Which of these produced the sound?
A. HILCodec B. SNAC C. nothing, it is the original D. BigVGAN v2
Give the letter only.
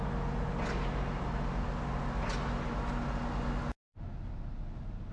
C